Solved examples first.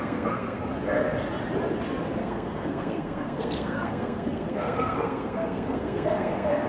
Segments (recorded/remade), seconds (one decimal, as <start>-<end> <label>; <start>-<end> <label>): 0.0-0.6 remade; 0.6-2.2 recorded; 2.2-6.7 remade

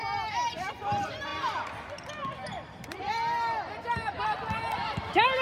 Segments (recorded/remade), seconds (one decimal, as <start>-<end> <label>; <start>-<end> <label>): 0.0-0.7 remade; 0.7-5.4 recorded

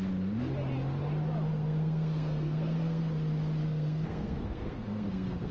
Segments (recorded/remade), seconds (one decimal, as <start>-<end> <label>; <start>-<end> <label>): 0.0-1.5 recorded; 1.5-3.0 remade; 3.0-3.6 recorded; 3.6-5.5 remade

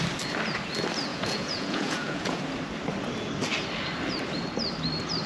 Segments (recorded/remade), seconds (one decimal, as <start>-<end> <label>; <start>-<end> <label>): 0.0-1.1 recorded; 1.1-2.4 remade; 2.4-5.3 recorded

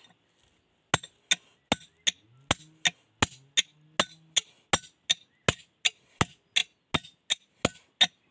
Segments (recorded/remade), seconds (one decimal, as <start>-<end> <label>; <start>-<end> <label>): 0.0-8.3 recorded